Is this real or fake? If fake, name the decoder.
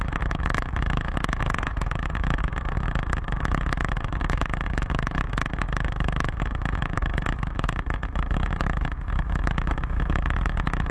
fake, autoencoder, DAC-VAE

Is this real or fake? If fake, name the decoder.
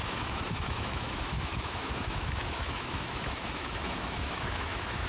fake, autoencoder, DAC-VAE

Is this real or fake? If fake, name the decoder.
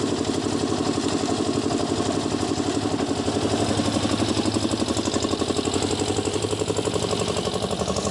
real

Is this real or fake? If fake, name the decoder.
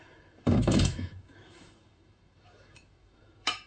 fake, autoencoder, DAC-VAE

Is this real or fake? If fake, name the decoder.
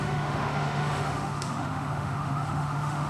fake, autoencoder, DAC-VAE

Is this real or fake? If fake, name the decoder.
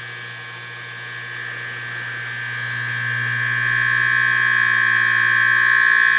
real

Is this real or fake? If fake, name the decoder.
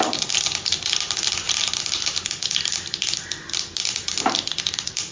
real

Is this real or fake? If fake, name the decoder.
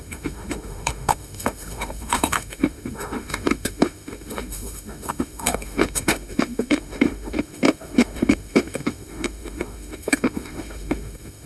fake, autoencoder, DAC-VAE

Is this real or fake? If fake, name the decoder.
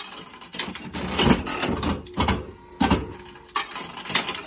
real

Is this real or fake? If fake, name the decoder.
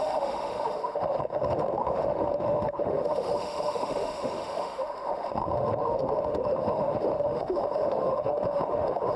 fake, autoencoder, DAC-VAE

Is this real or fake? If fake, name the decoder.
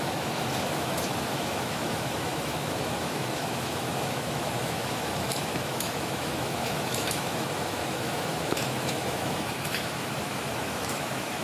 fake, autoencoder, DAC-VAE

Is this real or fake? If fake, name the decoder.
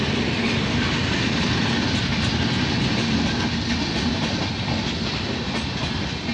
real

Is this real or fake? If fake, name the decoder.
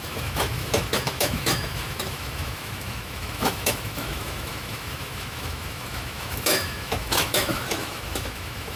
fake, autoencoder, DAC-VAE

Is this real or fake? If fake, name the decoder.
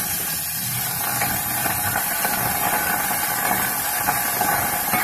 real